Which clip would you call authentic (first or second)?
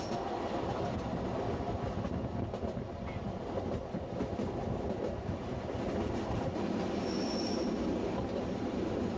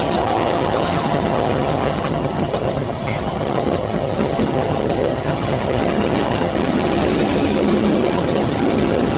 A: first